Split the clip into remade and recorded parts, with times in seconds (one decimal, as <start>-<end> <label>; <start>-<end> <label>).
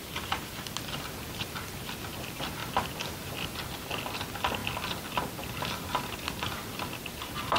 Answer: 0.0-7.6 recorded